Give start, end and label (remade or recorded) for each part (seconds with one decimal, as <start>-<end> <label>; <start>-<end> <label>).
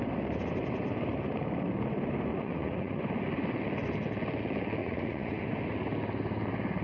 0.0-2.3 recorded; 2.3-3.0 remade; 3.0-4.8 recorded; 4.8-5.5 remade; 5.5-6.8 recorded